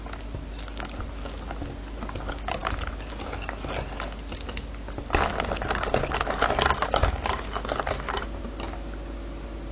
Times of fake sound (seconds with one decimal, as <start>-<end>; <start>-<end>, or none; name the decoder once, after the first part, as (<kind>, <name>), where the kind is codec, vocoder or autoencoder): none